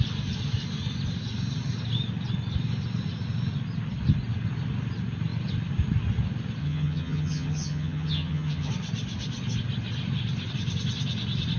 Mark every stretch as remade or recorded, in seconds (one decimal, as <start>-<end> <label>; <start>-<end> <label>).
0.0-6.6 recorded; 6.6-8.7 remade; 8.7-11.6 recorded

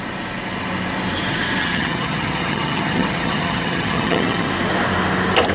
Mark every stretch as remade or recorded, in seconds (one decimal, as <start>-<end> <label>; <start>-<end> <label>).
0.0-1.6 recorded; 1.6-4.5 remade; 4.5-5.5 recorded